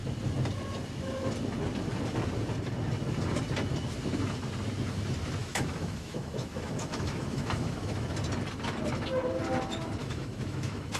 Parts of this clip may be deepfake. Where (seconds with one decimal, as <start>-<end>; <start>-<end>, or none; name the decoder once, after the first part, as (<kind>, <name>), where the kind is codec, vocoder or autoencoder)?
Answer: 5.4-8.1 (autoencoder, DAC-VAE); 10.0-11.0